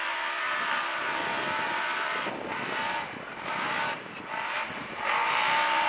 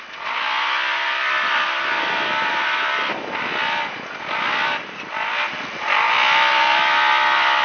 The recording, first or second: second